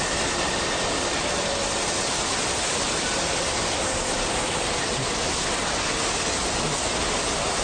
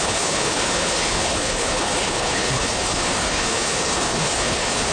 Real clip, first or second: first